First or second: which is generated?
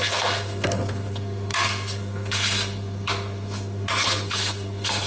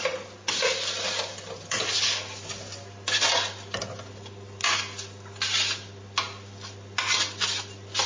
first